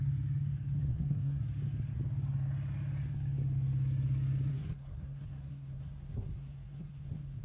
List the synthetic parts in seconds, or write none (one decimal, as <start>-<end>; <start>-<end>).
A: 0.8-1.4; 4.5-7.4